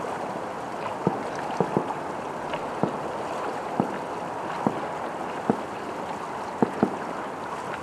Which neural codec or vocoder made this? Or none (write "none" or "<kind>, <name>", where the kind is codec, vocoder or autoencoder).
none